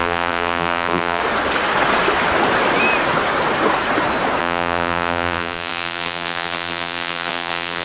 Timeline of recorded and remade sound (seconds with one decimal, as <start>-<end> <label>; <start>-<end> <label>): 0.0-1.2 remade; 1.2-4.4 recorded; 4.4-7.8 remade